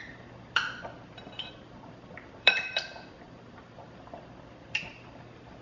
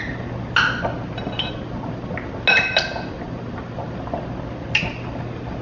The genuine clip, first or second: second